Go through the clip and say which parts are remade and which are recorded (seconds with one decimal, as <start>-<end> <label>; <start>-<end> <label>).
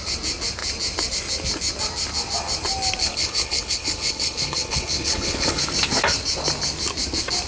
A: 0.0-3.0 recorded; 3.0-5.6 remade; 5.6-7.5 recorded